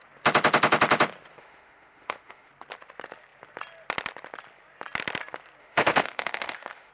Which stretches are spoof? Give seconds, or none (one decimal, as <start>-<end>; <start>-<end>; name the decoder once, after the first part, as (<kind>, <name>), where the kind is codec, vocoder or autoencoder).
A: 1.4-2.5 (autoencoder, DAC-VAE); 5.6-6.9